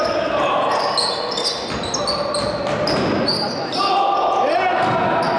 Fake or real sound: real